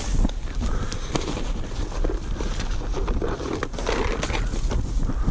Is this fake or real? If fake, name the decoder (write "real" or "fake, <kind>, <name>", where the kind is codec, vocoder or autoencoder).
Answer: real